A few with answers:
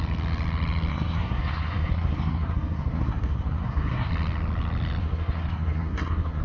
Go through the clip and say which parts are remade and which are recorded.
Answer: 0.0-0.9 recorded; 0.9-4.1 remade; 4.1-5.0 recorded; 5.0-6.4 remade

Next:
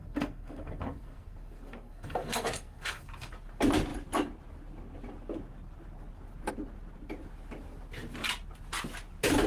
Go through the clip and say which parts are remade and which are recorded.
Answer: 0.0-3.3 remade; 3.3-9.5 recorded

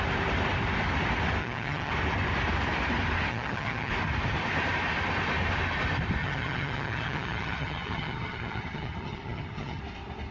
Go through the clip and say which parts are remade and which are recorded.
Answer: 0.0-1.4 recorded; 1.4-1.9 remade; 1.9-3.3 recorded; 3.3-3.9 remade; 3.9-6.2 recorded; 6.2-9.8 remade; 9.8-10.3 recorded

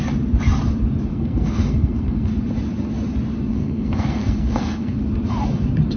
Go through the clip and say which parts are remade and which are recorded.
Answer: 0.0-1.1 recorded; 1.1-2.3 remade; 2.3-3.5 recorded; 3.5-5.0 remade; 5.0-6.0 recorded

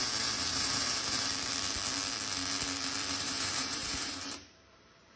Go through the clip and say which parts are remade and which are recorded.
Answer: 0.0-1.3 remade; 1.3-3.1 recorded; 3.1-5.2 remade

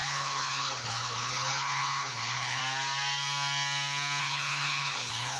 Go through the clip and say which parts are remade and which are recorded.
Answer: 0.0-2.6 remade; 2.6-4.2 recorded; 4.2-5.4 remade